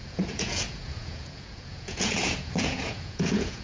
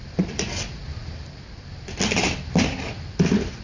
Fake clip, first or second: first